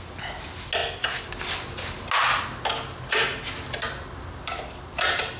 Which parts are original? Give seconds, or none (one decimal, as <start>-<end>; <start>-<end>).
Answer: 0.0-5.4